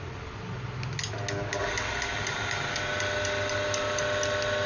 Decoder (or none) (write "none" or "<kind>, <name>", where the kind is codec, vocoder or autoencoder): none